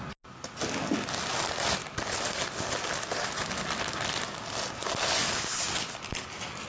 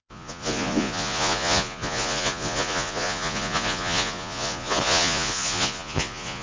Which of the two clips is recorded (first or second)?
first